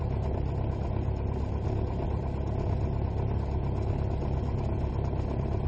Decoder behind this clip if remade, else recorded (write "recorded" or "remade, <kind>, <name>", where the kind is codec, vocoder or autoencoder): recorded